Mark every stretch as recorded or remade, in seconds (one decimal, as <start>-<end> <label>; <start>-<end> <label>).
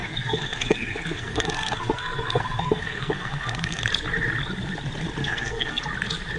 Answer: 0.0-3.8 remade; 3.8-5.2 recorded; 5.2-5.8 remade; 5.8-6.4 recorded